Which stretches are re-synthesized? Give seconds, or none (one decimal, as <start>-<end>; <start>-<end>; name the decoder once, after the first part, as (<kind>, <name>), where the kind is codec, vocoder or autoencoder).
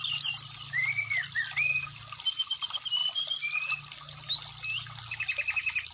none